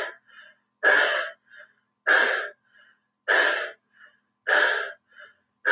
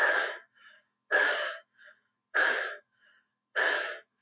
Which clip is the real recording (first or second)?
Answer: first